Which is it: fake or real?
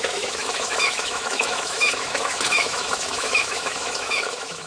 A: fake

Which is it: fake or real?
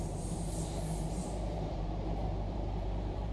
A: fake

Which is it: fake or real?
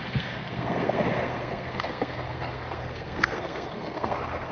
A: fake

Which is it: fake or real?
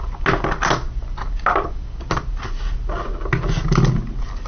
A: real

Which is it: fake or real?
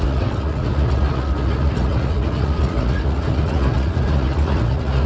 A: fake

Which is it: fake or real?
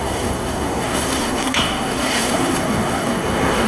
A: fake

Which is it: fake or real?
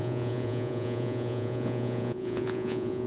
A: fake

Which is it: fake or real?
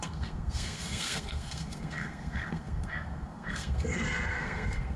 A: fake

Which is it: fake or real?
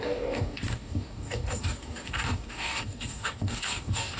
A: fake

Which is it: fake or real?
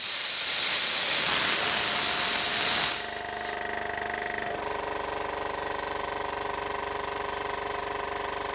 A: real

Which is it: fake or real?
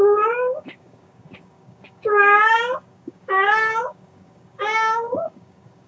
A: fake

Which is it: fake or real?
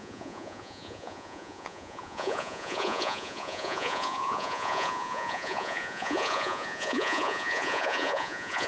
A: fake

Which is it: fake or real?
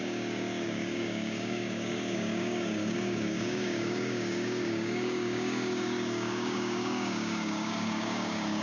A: fake